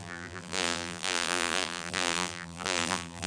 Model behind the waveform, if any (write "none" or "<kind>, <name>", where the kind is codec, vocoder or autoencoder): vocoder, BigVGAN v2